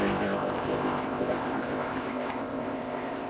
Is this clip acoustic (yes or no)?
no